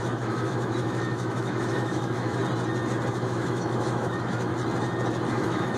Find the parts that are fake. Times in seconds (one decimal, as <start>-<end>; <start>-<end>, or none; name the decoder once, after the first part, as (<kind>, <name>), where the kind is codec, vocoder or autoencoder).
0.0-2.4 (autoencoder, DAC-VAE); 3.1-4.5; 5.3-5.8